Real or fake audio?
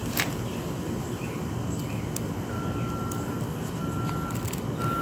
real